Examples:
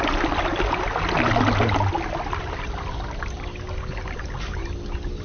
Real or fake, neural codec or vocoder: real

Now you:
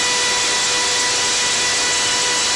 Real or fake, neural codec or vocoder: real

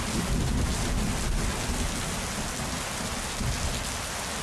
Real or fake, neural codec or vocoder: real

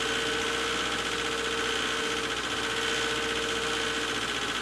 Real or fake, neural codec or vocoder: real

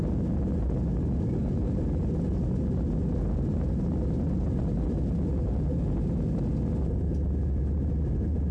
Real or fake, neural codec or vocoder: real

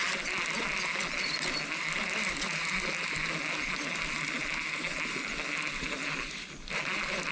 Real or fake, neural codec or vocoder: real